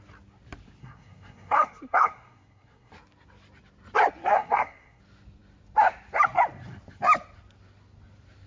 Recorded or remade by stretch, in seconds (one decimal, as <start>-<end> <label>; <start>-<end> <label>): 0.0-0.8 recorded; 0.8-2.9 remade; 2.9-4.3 recorded; 4.3-5.0 remade; 5.0-8.5 recorded